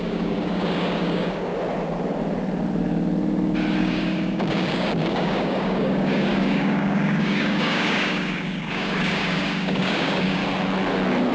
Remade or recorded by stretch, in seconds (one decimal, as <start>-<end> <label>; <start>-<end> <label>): 0.0-1.5 remade; 1.5-3.8 recorded; 3.8-10.4 remade; 10.4-11.3 recorded